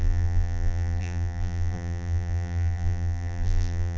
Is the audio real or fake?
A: fake